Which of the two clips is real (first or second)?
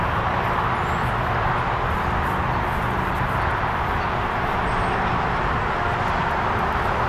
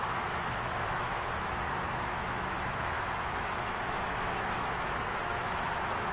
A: first